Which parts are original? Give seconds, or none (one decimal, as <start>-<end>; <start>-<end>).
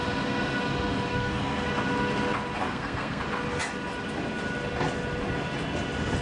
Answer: 0.0-1.1; 1.7-2.6; 3.2-6.2